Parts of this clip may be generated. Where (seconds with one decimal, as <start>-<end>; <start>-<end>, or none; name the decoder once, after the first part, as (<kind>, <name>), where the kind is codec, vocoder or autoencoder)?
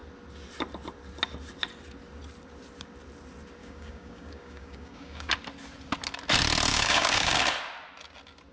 3.6-5.3 (codec, DAC); 6.7-7.3